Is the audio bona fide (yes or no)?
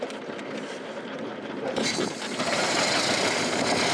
no